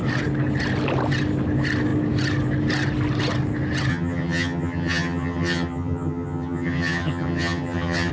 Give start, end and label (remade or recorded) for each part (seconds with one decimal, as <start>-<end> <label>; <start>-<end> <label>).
0.0-3.9 recorded; 3.9-8.1 remade